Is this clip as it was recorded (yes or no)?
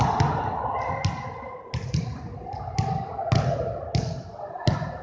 yes